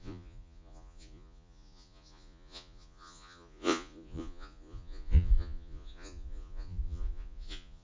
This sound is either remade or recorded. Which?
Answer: remade